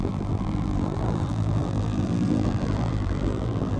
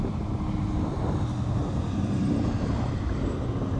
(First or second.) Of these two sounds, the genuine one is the second